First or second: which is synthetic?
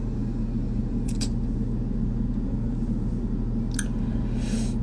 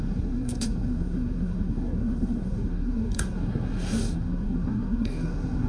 second